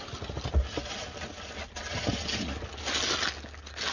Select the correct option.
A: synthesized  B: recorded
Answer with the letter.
B